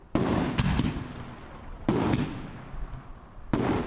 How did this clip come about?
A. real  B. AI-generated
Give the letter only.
A